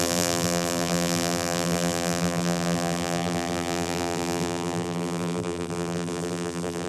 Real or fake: fake